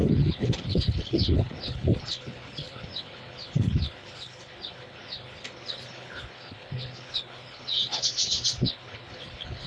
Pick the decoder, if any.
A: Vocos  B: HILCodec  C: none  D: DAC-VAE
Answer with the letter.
B